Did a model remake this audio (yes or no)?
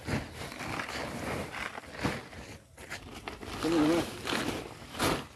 no